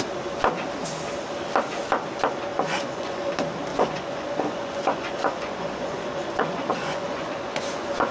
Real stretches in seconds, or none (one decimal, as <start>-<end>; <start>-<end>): 0.0-2.5; 3.3-3.7